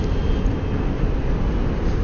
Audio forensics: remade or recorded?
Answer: recorded